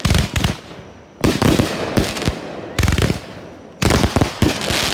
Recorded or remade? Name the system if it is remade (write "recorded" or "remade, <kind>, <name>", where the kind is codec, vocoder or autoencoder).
recorded